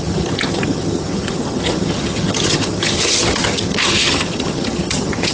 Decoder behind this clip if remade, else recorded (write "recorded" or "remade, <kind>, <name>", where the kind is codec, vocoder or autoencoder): remade, vocoder, HiFi-GAN